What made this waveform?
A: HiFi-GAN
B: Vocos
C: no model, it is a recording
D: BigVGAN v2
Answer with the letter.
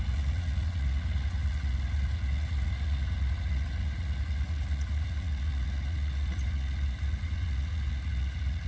B